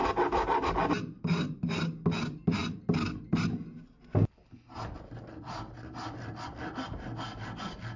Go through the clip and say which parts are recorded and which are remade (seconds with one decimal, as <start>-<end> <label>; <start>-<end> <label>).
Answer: 0.0-2.6 recorded; 2.6-3.6 remade; 3.6-8.0 recorded

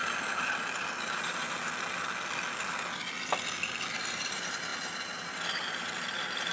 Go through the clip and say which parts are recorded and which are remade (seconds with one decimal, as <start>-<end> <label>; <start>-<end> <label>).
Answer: 0.0-3.9 recorded; 3.9-6.5 remade

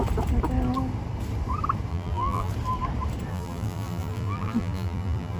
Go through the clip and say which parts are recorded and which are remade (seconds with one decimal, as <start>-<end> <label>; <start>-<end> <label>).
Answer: 0.0-1.9 recorded; 1.9-2.5 remade; 2.5-3.3 recorded; 3.3-5.4 remade

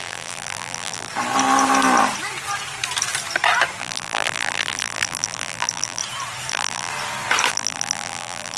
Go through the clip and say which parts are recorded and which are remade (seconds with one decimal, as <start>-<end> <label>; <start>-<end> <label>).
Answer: 0.0-1.1 remade; 1.1-3.8 recorded; 3.8-6.0 remade; 6.0-6.5 recorded; 6.5-6.9 remade; 6.9-7.5 recorded; 7.5-8.6 remade

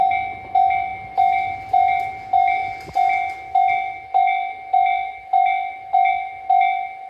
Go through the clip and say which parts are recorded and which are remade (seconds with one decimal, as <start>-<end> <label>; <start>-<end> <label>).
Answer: 0.0-7.1 recorded

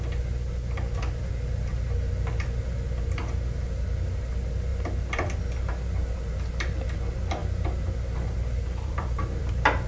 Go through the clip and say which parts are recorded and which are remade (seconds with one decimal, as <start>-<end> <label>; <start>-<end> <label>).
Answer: 0.0-7.4 recorded; 7.4-9.5 remade; 9.5-9.9 recorded

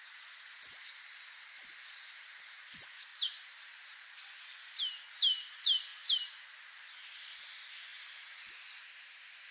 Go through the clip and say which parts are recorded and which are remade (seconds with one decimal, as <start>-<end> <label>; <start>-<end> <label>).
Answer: 0.0-3.1 recorded; 3.1-4.1 remade; 4.1-7.9 recorded; 7.9-8.5 remade; 8.5-9.5 recorded